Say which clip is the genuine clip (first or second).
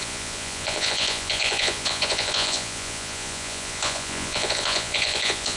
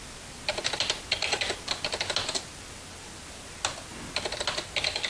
second